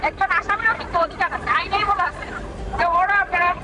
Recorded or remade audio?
recorded